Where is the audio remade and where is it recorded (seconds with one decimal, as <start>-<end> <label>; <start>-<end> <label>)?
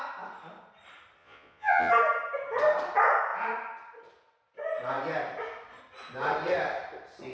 0.0-1.2 recorded; 1.2-1.9 remade; 1.9-7.3 recorded